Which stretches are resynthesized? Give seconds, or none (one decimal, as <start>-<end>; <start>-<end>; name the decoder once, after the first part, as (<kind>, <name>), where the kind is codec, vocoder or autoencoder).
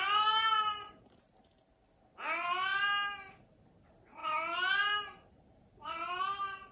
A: none